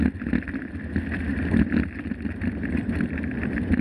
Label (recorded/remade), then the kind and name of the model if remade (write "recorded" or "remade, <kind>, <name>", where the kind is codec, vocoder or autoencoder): recorded